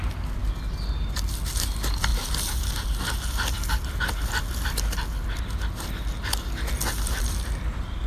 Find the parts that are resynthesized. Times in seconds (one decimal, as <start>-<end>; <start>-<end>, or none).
none